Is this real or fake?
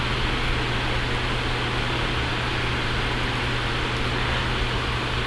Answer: real